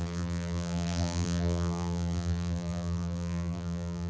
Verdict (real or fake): fake